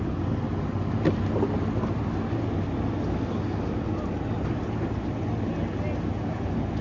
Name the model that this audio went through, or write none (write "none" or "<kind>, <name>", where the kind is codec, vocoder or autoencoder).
none